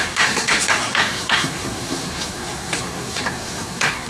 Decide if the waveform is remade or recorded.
remade